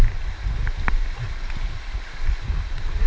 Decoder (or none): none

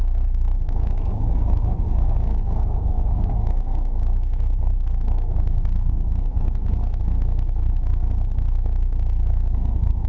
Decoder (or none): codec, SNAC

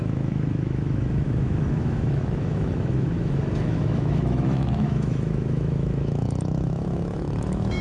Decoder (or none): autoencoder, DAC-VAE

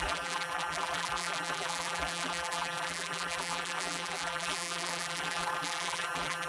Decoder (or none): vocoder, BigVGAN v2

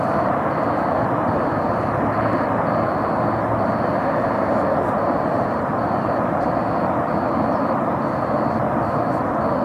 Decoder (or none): vocoder, BigVGAN v2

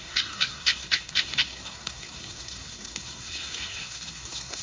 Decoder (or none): codec, SNAC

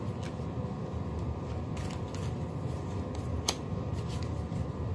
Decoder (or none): vocoder, BigVGAN v2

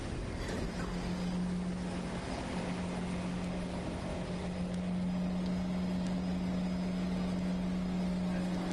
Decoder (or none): none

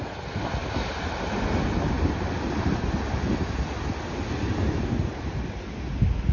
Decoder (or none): none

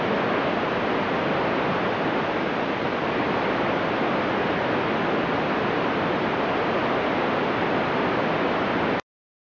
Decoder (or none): none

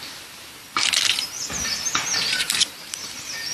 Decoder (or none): vocoder, BigVGAN v2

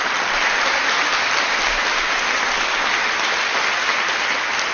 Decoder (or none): none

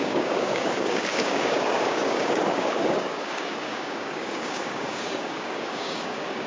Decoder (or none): codec, DAC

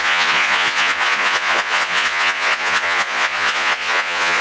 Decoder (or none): vocoder, Vocos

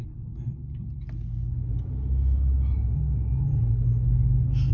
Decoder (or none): none